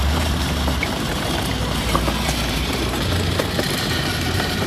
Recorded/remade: remade